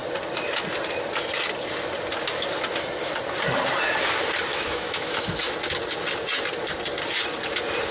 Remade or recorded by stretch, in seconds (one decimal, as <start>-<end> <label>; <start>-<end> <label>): 0.0-4.5 recorded; 4.5-5.3 remade; 5.3-7.9 recorded